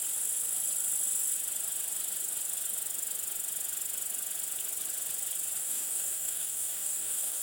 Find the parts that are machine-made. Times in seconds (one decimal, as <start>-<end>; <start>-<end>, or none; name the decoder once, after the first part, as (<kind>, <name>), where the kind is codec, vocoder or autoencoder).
5.6-7.4 (codec, DAC)